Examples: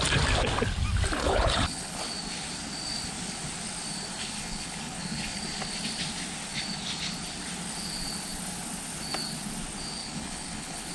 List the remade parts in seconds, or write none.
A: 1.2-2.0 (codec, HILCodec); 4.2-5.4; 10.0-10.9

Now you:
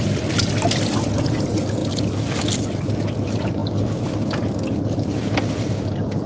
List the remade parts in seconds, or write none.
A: none

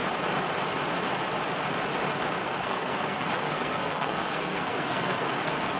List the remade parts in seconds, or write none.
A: 2.4-5.8 (codec, SNAC)

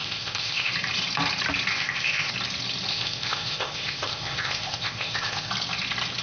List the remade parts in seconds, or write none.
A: 0.0-0.7 (codec, ZipCodec); 1.7-2.3; 2.9-5.5

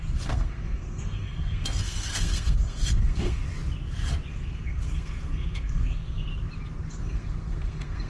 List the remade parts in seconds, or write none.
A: 0.0-3.4 (codec, SNAC); 4.3-6.3; 7.0-8.1

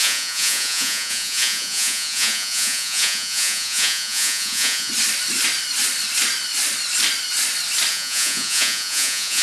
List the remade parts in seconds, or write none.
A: 0.0-4.9 (vocoder, Vocos); 7.9-9.4

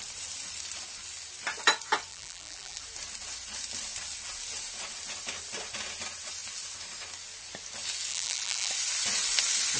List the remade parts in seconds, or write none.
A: 2.1-2.8 (vocoder, BigVGAN v2); 8.1-8.7